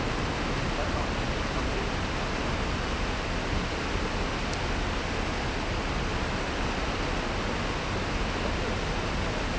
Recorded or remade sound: recorded